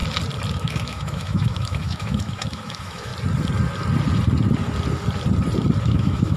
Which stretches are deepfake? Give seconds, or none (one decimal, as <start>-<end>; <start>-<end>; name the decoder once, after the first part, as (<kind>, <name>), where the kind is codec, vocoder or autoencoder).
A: 0.5-3.1 (autoencoder, DAC-VAE); 5.8-6.4